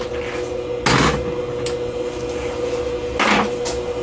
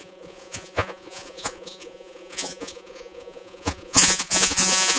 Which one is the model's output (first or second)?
second